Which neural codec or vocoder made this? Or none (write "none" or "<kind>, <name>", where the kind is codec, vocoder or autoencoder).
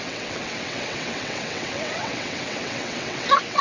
vocoder, WaveNeXt